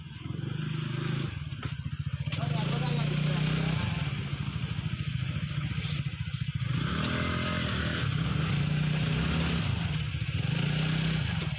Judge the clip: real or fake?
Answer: real